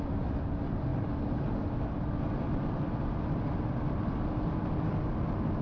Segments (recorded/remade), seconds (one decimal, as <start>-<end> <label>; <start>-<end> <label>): 0.0-5.6 recorded